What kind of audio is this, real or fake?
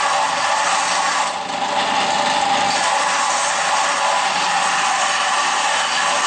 real